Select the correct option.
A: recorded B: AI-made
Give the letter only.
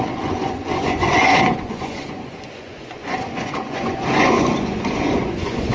B